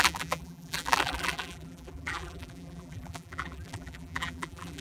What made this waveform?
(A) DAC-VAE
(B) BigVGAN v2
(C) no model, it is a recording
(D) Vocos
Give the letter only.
B